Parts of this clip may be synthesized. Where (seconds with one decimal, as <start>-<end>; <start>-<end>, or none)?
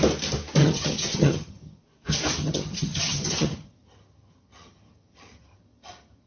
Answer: 0.6-1.8; 2.4-6.3